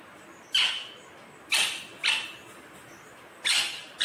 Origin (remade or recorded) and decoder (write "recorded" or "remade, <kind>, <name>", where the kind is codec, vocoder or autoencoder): recorded